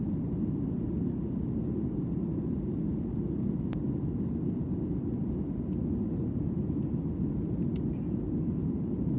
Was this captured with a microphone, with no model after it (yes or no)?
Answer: yes